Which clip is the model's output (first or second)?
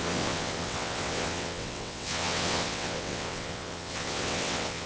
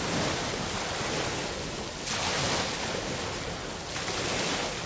first